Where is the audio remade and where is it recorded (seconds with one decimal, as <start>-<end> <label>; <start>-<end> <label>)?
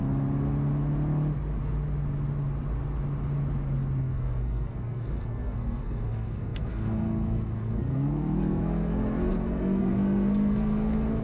0.0-4.0 recorded; 4.0-11.2 remade